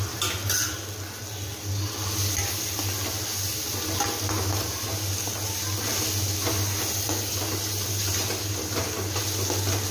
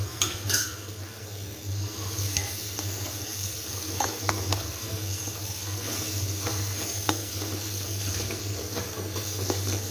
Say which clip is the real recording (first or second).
first